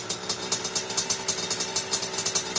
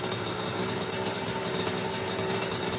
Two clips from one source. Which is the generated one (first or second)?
second